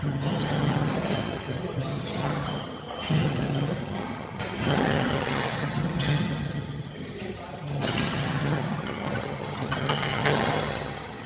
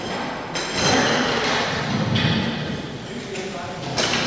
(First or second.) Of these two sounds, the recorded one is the second